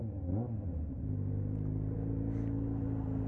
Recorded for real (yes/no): yes